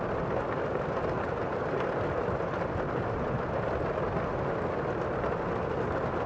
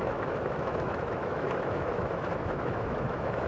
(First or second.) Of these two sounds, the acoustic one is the first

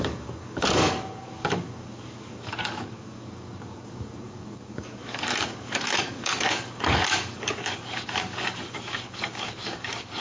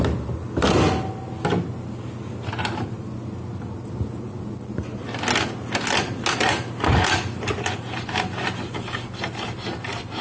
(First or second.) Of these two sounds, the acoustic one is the second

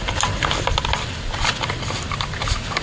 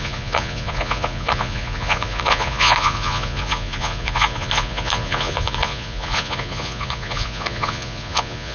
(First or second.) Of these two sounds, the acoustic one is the first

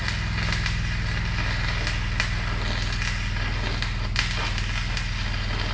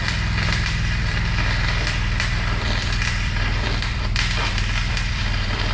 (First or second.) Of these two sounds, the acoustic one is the first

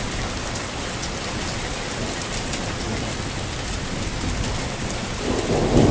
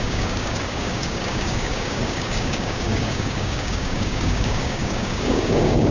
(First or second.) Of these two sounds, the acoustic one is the first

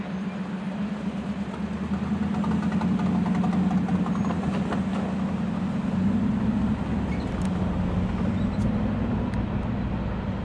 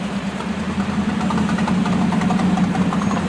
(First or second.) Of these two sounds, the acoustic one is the first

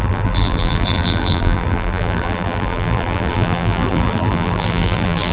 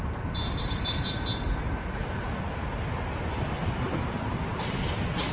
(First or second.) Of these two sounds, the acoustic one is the second